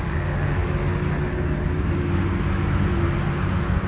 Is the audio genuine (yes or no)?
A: yes